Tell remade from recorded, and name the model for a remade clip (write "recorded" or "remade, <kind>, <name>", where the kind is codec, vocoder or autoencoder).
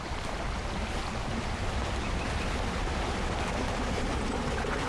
recorded